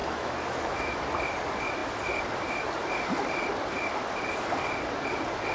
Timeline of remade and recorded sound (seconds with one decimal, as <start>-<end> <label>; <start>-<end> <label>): 0.0-1.0 remade; 1.0-5.5 recorded